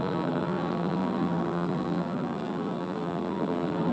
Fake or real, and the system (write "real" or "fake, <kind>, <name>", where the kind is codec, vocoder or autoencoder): fake, vocoder, BigVGAN v2